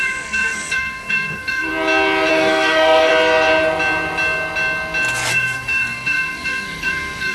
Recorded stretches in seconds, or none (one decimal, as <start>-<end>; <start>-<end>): 1.7-2.3; 3.1-5.3